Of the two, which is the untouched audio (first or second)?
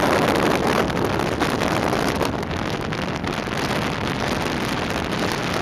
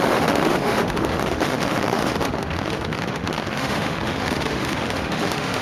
first